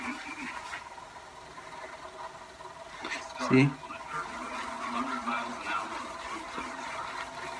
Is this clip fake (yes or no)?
no